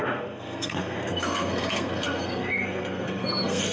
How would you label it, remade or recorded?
remade